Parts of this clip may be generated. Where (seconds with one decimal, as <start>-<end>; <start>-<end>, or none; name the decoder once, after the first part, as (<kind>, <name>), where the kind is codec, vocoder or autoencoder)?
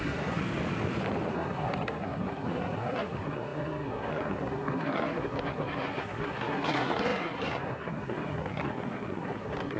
0.0-0.4 (codec, SNAC); 1.3-9.8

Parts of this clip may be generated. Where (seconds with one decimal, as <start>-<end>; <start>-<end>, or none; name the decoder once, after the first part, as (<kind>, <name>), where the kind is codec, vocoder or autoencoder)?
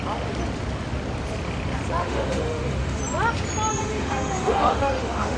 2.0-3.0 (autoencoder, DAC-VAE); 3.7-5.4